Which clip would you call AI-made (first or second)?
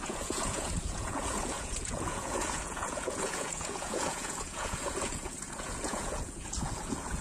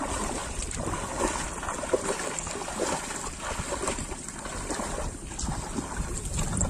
first